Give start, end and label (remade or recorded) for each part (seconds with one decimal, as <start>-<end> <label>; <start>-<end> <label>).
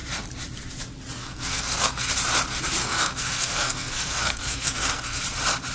0.0-1.2 recorded; 1.2-2.1 remade; 2.1-2.8 recorded; 2.8-5.2 remade; 5.2-5.7 recorded